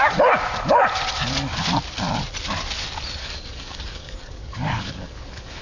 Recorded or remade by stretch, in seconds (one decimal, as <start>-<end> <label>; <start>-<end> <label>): 0.0-3.2 recorded; 3.2-5.6 remade

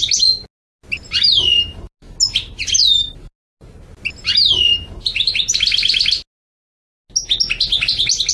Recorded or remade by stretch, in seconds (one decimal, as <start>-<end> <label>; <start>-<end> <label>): 0.0-8.3 recorded

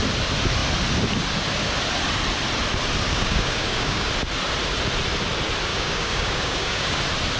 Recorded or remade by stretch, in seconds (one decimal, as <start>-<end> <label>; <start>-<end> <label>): 0.0-3.1 recorded; 3.1-4.1 remade; 4.1-5.7 recorded; 5.7-7.0 remade; 7.0-7.4 recorded

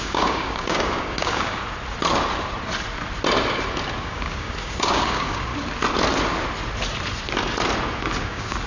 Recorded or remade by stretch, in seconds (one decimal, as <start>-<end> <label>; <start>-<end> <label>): 0.0-1.6 remade; 1.6-4.0 recorded; 4.0-5.5 remade; 5.5-8.2 recorded; 8.2-8.7 remade